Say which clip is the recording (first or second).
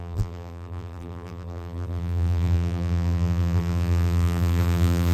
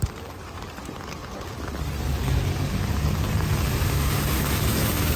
second